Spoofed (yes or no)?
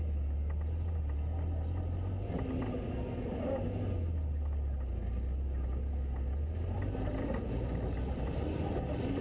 no